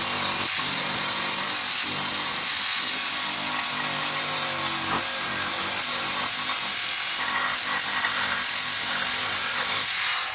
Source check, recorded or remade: recorded